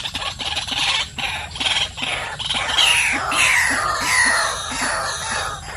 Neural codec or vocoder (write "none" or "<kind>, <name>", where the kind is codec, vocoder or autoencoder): none